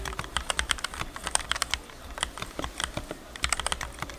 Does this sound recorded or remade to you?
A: recorded